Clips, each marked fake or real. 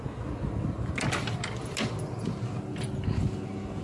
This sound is real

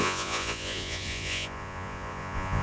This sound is fake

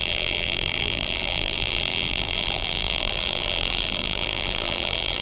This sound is fake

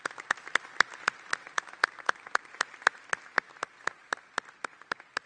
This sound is real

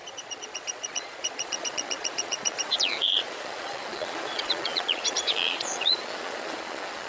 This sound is fake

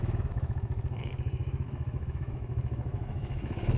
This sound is fake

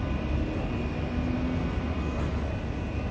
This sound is real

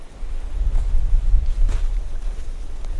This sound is real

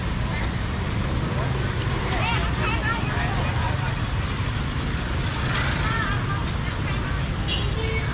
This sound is real